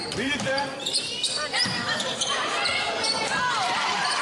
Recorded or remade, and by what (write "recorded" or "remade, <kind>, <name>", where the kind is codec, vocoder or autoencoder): remade, vocoder, BigVGAN v2